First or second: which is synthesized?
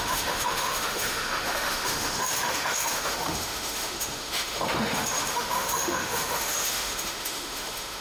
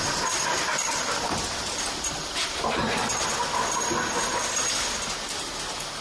first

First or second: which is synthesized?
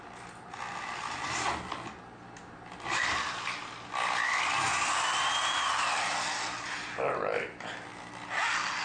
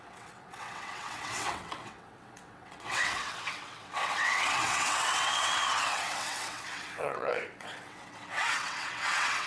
second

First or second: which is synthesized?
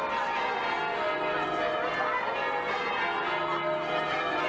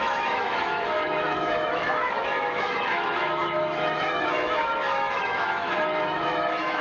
second